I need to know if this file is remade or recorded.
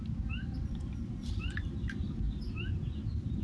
recorded